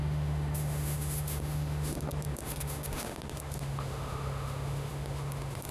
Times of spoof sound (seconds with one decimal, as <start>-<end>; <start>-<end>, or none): 0.0-5.7